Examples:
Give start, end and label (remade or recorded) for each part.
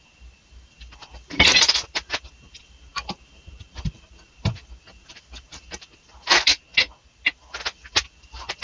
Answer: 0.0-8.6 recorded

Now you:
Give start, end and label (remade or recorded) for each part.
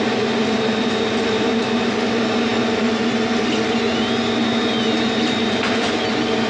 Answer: 0.0-6.5 recorded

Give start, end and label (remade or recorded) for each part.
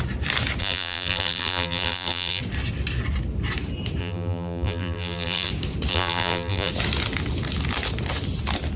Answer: 0.0-0.6 recorded; 0.6-2.4 remade; 2.4-4.0 recorded; 4.0-5.5 remade; 5.5-5.9 recorded; 5.9-6.7 remade; 6.7-8.8 recorded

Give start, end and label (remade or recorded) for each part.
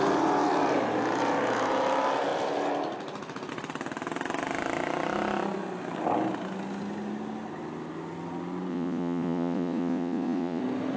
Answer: 0.0-8.7 recorded; 8.7-10.6 remade; 10.6-11.0 recorded